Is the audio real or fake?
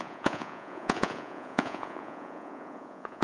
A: fake